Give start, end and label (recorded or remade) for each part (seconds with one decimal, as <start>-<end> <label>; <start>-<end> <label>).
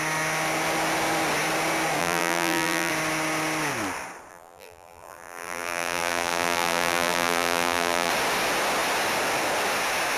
0.0-2.0 recorded; 2.0-2.9 remade; 2.9-4.3 recorded; 4.3-8.1 remade; 8.1-10.2 recorded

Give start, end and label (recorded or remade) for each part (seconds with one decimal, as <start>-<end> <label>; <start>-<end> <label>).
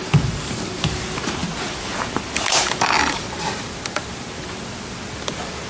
0.0-5.7 recorded